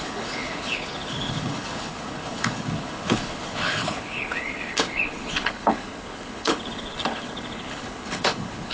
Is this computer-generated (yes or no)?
yes